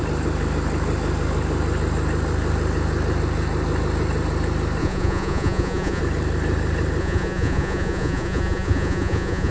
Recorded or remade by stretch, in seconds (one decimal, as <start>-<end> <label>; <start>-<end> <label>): 0.0-4.8 recorded; 4.8-6.0 remade; 6.0-7.0 recorded; 7.0-9.5 remade